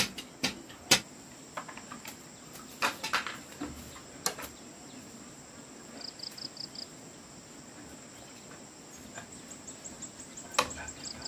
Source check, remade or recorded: recorded